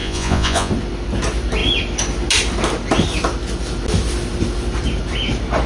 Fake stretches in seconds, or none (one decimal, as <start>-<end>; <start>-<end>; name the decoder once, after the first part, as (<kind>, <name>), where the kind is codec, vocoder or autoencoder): 0.0-0.7 (vocoder, Vocos)